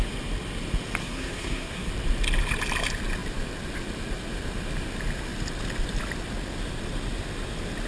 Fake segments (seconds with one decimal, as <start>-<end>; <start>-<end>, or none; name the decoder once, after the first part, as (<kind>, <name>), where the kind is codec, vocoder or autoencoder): 1.0-1.9 (codec, SNAC)